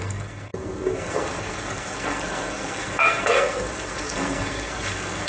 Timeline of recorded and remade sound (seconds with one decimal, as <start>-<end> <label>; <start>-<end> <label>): 0.0-5.3 remade